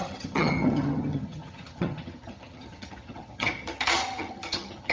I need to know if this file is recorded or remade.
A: remade